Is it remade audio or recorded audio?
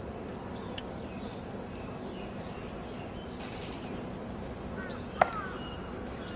recorded